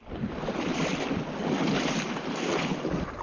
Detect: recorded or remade recorded